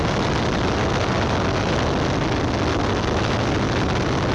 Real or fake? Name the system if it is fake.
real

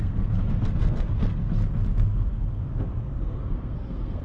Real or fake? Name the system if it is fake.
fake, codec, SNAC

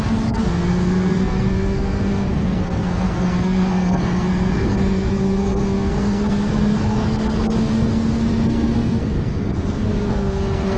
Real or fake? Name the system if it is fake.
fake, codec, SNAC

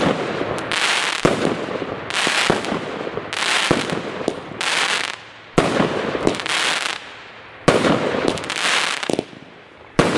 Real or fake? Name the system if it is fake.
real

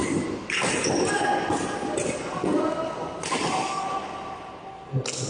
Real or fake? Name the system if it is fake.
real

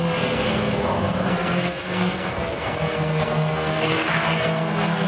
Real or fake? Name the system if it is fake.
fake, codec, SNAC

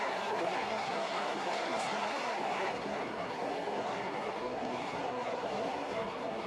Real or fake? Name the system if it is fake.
fake, codec, SNAC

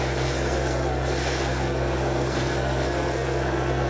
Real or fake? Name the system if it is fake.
fake, codec, SNAC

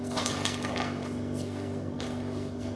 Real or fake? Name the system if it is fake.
fake, codec, SNAC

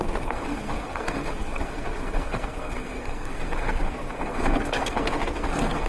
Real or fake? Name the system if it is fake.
fake, codec, SNAC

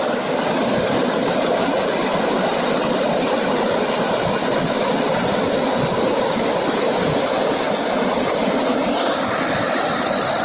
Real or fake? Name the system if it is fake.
real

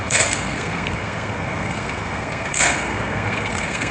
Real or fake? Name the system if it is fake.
fake, codec, SNAC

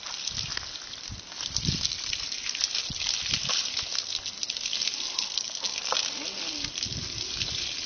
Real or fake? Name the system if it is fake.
real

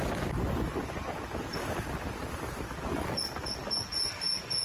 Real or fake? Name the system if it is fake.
real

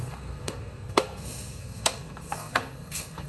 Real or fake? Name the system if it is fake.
fake, codec, SNAC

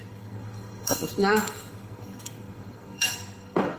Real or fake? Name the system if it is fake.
fake, codec, SNAC